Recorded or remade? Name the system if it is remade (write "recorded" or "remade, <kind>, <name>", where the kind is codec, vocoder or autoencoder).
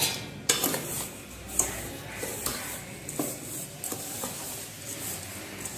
recorded